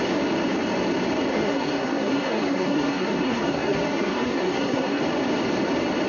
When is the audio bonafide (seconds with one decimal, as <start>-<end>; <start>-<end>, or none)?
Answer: 0.0-1.3; 5.0-6.1